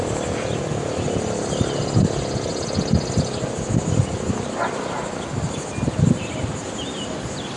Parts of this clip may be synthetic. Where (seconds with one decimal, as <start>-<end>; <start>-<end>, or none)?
none